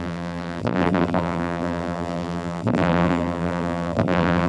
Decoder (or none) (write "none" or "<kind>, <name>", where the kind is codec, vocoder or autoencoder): vocoder, BigVGAN v2